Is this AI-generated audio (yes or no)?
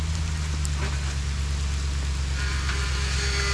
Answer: no